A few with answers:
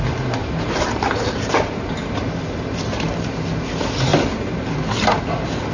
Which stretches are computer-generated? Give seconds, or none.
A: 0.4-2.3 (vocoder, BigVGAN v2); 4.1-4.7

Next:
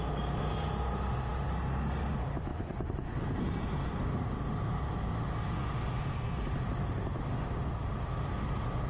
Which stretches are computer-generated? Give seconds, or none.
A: 2.5-3.1 (vocoder, Vocos)

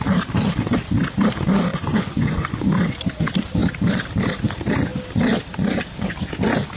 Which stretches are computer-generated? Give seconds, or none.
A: 1.7-2.5 (vocoder, Vocos)

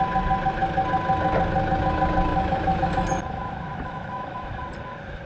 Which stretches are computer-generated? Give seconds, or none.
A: 2.3-4.6 (autoencoder, DAC-VAE)

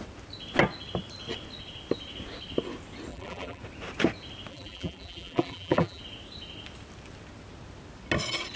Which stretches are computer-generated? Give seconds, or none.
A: 3.1-3.6 (vocoder, BigVGAN v2); 4.5-6.0

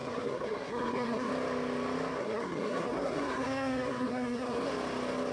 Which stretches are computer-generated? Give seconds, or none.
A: 0.0-1.3 (codec, SNAC); 2.2-4.7